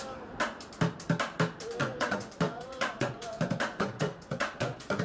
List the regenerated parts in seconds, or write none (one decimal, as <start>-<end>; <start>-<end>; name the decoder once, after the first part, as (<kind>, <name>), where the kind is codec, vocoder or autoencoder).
1.8-5.0 (vocoder, Vocos)